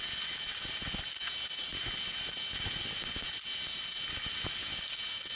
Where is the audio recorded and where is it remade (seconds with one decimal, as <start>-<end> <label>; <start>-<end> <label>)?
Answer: 0.0-5.4 recorded